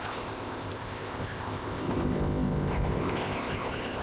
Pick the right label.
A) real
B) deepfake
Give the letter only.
B